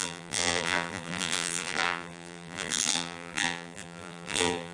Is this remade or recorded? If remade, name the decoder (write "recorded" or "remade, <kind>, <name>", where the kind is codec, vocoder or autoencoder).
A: remade, vocoder, BigVGAN v2